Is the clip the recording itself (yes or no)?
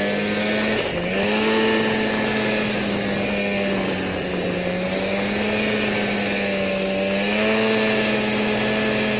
yes